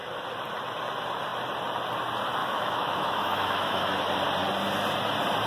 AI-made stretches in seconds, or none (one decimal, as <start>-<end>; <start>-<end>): 2.4-4.0